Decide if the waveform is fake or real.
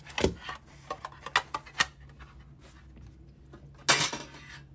real